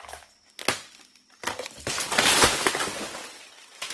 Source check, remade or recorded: recorded